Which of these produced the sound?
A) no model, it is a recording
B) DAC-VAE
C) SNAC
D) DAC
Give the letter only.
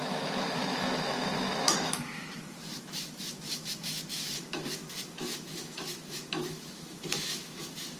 B